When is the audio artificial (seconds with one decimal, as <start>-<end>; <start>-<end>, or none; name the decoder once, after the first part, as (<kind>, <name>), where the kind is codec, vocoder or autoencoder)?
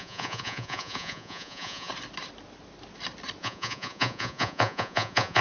0.0-1.9 (vocoder, Vocos); 3.4-5.4